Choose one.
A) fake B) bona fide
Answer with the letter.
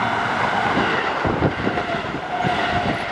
A